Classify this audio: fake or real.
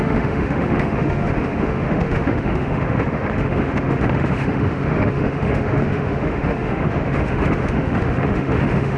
fake